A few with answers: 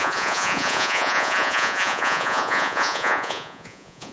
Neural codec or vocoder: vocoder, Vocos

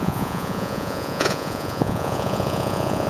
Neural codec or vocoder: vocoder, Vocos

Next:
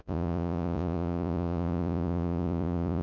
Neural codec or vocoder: vocoder, Vocos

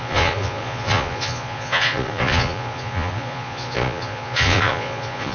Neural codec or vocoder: vocoder, Vocos